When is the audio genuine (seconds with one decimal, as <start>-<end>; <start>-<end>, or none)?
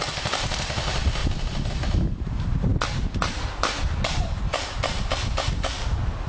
1.2-1.7